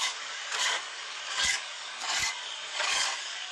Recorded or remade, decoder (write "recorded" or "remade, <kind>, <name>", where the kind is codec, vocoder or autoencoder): remade, codec, DAC